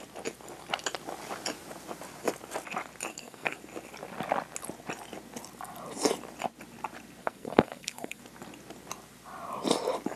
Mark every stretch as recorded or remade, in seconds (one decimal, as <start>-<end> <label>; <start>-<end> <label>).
0.0-3.1 recorded; 3.1-3.6 remade; 3.6-7.2 recorded; 7.2-8.2 remade; 8.2-10.2 recorded